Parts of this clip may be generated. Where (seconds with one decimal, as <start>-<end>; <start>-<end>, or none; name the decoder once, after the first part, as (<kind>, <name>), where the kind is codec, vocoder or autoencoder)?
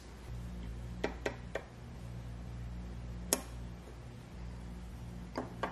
none